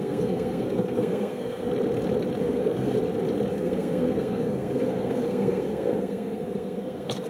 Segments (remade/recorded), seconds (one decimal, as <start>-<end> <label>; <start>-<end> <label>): 0.0-1.7 remade; 1.7-2.4 recorded; 2.4-3.0 remade; 3.0-3.5 recorded; 3.5-7.3 remade